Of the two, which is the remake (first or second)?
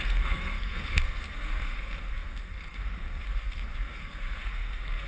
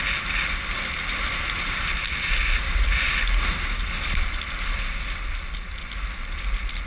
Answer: first